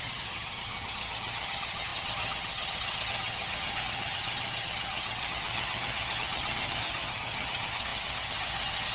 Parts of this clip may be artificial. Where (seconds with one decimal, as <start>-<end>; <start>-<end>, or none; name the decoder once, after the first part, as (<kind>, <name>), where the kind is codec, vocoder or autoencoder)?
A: 0.0-8.9 (vocoder, HiFi-GAN)